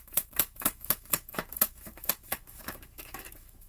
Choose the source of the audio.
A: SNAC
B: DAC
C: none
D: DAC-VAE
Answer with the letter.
D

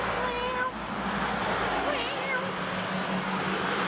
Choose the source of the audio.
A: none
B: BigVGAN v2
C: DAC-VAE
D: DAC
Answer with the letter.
A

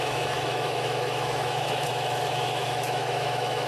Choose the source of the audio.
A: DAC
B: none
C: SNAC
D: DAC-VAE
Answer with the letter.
D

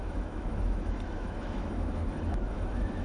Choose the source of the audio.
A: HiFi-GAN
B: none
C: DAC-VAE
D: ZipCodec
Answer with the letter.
C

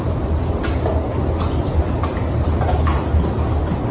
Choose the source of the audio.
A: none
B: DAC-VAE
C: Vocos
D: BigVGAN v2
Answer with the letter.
A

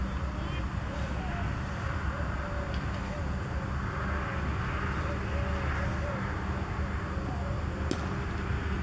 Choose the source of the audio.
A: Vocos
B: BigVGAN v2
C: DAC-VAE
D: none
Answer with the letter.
D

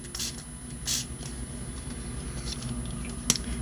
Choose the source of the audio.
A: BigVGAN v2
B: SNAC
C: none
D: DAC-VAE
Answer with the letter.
C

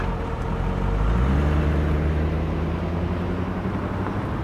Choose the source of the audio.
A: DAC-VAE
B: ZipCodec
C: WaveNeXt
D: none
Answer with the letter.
D